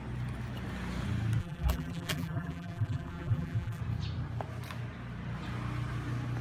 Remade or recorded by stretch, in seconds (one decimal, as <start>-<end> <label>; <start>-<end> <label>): 0.0-1.4 recorded; 1.4-3.8 remade; 3.8-6.4 recorded

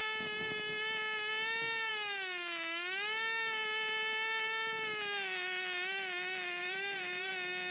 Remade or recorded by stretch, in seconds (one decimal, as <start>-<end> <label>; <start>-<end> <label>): 0.0-6.6 recorded; 6.6-7.3 remade; 7.3-7.7 recorded